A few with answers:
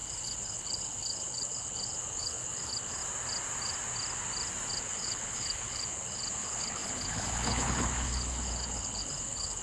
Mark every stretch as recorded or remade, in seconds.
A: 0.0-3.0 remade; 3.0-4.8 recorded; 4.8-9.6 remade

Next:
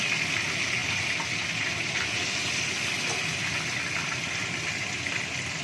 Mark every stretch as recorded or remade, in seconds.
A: 0.0-5.6 recorded

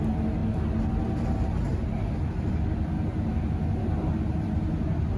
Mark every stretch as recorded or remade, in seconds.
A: 0.0-5.2 recorded

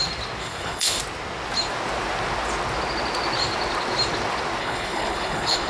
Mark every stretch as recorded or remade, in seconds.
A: 0.0-0.4 recorded; 0.4-1.0 remade; 1.0-4.6 recorded; 4.6-5.7 remade

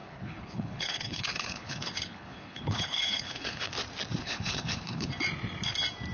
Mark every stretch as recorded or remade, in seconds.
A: 0.0-3.7 remade; 3.7-4.2 recorded; 4.2-5.1 remade; 5.1-6.1 recorded

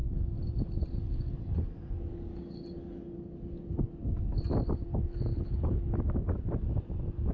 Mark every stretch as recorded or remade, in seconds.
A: 0.0-5.3 recorded; 5.3-5.9 remade; 5.9-7.3 recorded

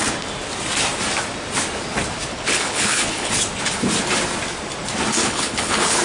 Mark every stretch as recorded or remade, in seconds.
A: 0.0-2.3 recorded; 2.3-3.3 remade; 3.3-5.2 recorded; 5.2-6.0 remade

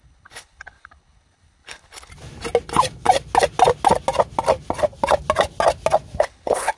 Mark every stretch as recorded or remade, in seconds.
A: 0.0-2.1 remade; 2.1-6.2 recorded; 6.2-6.8 remade